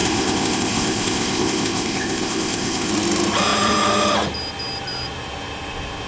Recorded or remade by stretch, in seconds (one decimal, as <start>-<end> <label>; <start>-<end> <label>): 0.0-2.9 remade; 2.9-6.1 recorded